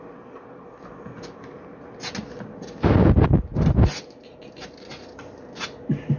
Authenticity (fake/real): real